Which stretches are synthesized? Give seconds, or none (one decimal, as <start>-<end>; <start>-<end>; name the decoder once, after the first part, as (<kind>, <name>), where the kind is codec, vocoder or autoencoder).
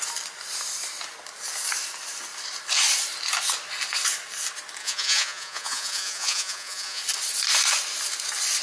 4.8-7.0 (vocoder, Vocos)